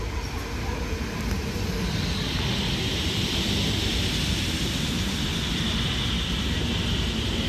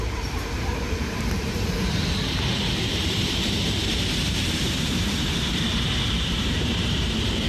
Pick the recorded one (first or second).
first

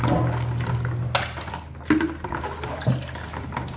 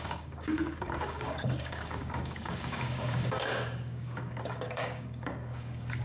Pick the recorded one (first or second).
first